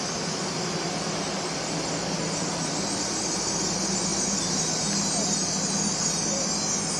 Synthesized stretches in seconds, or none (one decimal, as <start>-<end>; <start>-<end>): none